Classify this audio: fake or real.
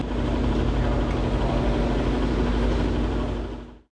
real